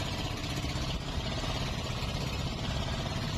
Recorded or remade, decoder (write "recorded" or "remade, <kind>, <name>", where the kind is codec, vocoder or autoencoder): recorded